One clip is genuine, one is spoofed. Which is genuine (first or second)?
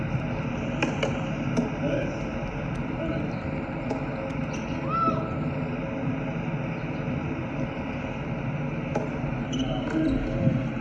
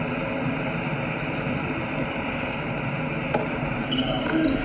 first